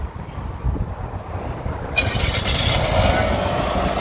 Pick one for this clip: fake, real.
real